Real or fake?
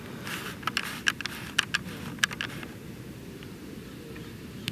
real